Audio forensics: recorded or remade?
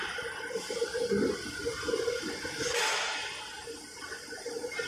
recorded